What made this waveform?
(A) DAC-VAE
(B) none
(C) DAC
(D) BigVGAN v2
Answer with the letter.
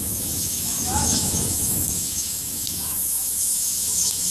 A